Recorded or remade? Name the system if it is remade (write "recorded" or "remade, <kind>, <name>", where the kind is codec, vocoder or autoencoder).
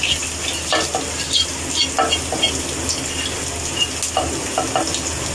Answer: recorded